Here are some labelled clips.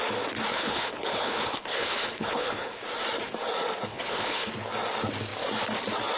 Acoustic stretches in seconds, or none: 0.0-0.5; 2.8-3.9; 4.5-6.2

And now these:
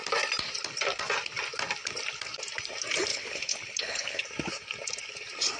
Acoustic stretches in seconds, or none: 0.0-3.1; 4.2-5.6

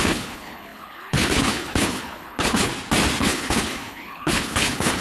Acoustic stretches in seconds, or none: 2.7-3.2

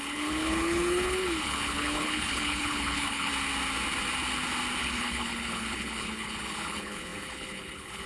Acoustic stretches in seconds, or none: 3.3-4.8